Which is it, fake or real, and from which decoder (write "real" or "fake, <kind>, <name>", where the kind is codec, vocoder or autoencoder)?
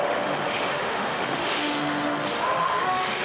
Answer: fake, autoencoder, DAC-VAE